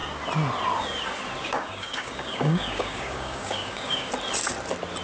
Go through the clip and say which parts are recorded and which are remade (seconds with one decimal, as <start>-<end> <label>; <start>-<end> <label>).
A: 0.0-1.4 recorded; 1.4-4.1 remade; 4.1-5.0 recorded